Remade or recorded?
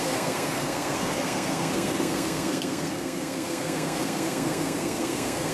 remade